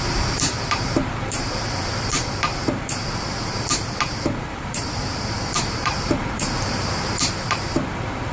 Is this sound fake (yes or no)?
yes